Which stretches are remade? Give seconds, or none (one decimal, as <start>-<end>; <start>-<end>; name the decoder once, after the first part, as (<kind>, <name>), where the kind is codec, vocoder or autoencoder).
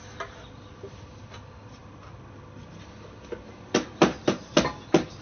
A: none